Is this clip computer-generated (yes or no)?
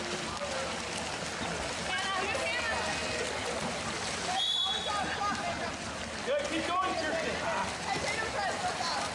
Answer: no